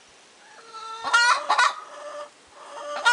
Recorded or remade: recorded